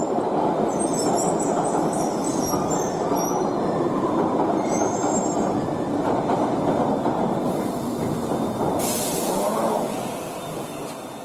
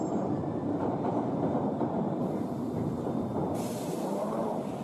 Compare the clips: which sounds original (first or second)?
first